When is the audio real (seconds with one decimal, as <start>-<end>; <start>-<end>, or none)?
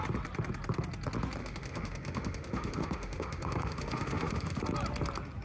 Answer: 0.0-1.4; 4.6-5.4